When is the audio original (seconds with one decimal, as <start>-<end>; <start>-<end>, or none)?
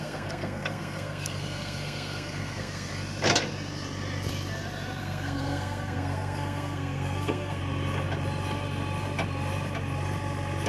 2.9-5.0; 7.6-10.7